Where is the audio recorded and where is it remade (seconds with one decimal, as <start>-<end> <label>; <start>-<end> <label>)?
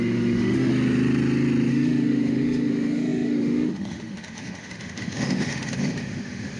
0.0-0.7 remade; 0.7-1.7 recorded; 1.7-6.6 remade